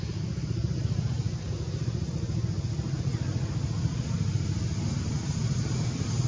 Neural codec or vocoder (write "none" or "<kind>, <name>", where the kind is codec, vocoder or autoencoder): none